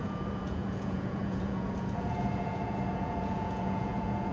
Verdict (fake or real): fake